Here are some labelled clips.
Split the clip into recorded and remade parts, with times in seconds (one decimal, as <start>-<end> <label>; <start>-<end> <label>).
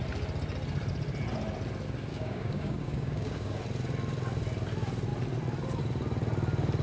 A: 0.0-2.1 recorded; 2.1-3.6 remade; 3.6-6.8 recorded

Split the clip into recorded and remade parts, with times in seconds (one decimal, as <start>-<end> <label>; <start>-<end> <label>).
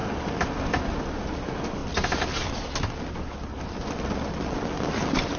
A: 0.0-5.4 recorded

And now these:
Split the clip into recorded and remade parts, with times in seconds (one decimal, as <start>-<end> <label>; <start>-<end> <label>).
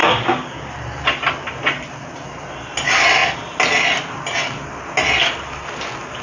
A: 0.0-0.7 remade; 0.7-6.2 recorded